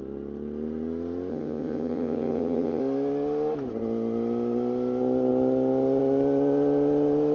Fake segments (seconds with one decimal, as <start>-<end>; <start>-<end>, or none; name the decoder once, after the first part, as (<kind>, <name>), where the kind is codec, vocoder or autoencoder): 1.3-2.8 (vocoder, HiFi-GAN)

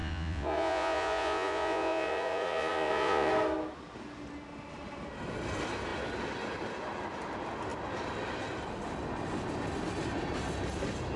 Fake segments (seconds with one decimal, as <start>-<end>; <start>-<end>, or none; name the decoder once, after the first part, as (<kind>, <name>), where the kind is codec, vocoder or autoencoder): 0.0-3.3 (vocoder, Vocos)

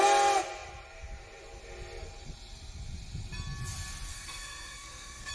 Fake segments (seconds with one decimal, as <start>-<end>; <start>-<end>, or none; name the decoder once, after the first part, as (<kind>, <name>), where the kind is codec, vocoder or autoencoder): 4.1-5.3 (codec, SNAC)

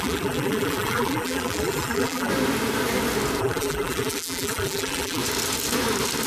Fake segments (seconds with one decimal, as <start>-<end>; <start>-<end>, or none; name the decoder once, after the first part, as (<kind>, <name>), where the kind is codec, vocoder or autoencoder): 0.0-2.3 (vocoder, BigVGAN v2); 3.4-5.2

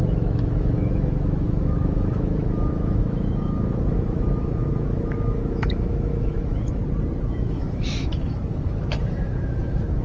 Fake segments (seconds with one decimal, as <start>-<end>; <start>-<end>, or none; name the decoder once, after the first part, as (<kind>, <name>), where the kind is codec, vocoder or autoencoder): 0.0-6.8 (autoencoder, DAC-VAE); 7.3-10.0

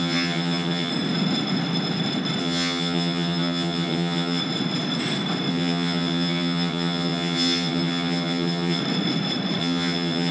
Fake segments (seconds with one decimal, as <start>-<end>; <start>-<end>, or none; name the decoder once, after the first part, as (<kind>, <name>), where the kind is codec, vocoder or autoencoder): 0.0-0.9 (vocoder, HiFi-GAN); 2.4-4.4; 5.5-8.8; 9.6-10.3